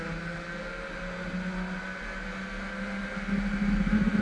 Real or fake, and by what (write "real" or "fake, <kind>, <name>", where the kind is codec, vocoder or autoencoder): real